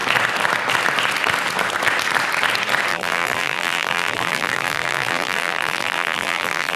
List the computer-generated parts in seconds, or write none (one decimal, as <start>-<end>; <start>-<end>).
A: 2.9-6.8

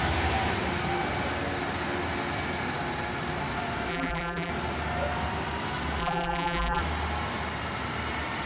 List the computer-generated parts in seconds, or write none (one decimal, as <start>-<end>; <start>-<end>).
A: 3.9-4.5; 6.0-6.8